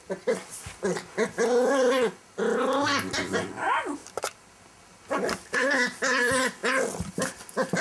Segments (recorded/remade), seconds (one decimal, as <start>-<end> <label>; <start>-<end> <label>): 0.0-7.8 recorded